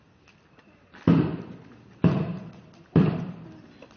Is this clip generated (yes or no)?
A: no